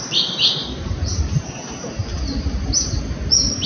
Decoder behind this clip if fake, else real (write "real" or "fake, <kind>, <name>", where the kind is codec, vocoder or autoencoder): real